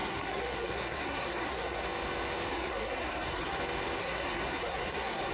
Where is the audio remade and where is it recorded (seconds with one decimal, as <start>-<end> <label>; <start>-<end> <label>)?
0.0-1.8 remade; 1.8-2.5 recorded; 2.5-3.6 remade; 3.6-4.0 recorded; 4.0-5.3 remade